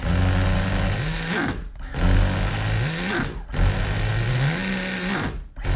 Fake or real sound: real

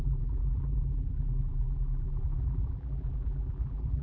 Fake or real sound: fake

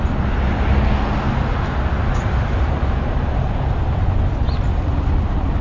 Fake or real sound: real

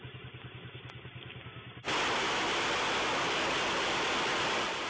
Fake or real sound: real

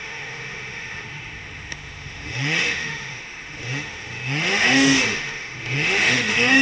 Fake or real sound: fake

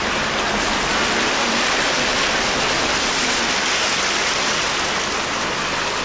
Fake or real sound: real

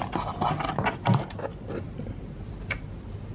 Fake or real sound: real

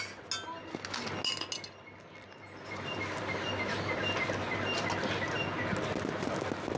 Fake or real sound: real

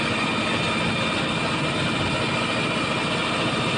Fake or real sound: real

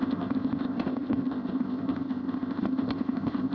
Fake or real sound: fake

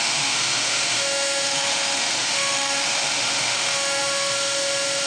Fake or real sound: fake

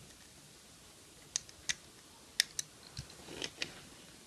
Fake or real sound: real